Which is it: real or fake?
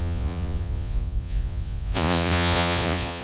fake